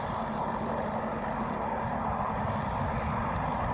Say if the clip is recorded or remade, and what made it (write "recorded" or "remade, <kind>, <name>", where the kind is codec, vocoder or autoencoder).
recorded